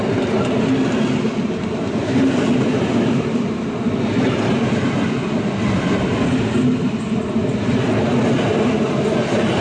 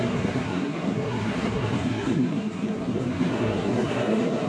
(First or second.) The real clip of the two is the first